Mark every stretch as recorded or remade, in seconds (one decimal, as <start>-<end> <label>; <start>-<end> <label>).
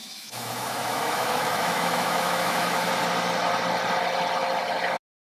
0.0-2.9 remade; 2.9-5.2 recorded